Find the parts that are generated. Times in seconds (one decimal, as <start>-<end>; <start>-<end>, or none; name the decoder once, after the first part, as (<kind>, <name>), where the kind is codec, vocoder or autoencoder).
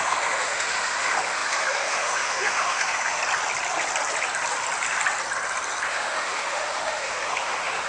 0.0-3.2 (autoencoder, DAC-VAE); 5.9-7.9